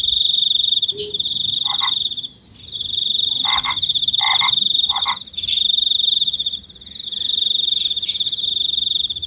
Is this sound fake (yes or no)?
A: yes